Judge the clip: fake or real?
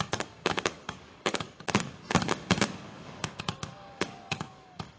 fake